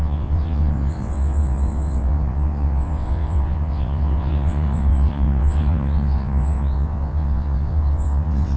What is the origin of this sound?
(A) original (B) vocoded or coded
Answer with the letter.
B